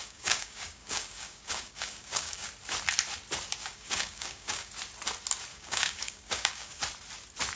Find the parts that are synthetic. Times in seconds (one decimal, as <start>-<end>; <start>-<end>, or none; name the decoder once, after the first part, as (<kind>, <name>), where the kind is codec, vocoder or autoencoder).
0.0-2.5 (codec, DAC); 3.6-4.7; 5.5-6.8

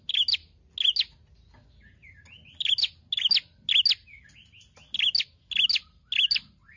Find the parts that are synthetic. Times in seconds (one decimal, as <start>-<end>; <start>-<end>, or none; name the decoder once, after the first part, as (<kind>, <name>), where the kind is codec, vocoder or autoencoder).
none

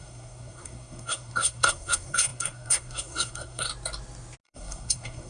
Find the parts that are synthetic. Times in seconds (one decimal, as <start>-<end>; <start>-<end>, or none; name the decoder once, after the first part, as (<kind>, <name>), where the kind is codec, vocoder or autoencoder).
0.0-3.7 (codec, SNAC); 4.4-5.3